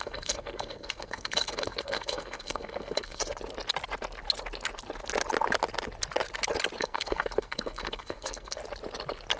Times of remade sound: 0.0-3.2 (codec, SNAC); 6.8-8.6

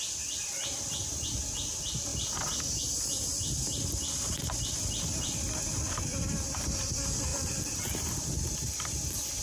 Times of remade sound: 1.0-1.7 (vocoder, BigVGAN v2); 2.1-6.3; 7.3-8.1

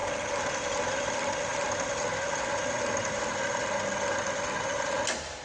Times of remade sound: none